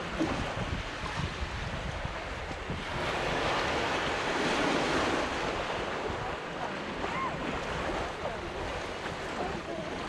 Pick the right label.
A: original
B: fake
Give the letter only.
A